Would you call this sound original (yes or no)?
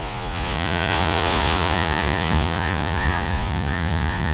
no